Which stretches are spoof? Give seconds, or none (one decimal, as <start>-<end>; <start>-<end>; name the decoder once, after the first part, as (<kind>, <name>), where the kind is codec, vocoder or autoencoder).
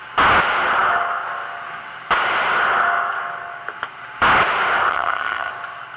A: 4.9-5.5 (vocoder, HiFi-GAN)